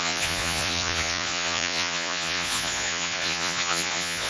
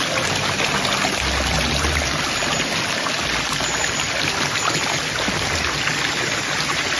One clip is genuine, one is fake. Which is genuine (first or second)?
second